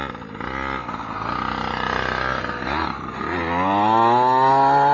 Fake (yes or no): no